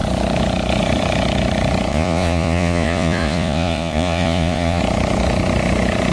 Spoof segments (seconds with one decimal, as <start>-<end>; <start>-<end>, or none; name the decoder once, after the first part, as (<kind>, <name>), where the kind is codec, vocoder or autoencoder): 1.9-4.8 (vocoder, Vocos)